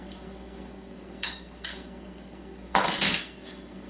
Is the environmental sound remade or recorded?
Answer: remade